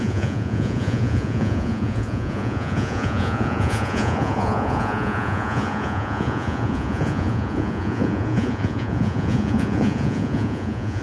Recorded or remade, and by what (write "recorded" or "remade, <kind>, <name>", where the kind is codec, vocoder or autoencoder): remade, vocoder, Vocos